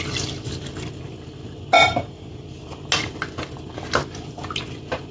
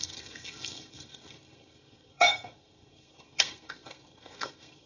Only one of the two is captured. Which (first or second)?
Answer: first